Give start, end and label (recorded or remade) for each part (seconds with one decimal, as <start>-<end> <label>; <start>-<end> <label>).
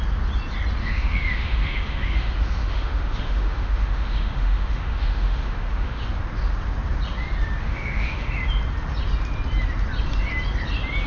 0.0-0.8 recorded; 0.8-6.0 remade; 6.0-7.6 recorded; 7.6-8.3 remade; 8.3-11.1 recorded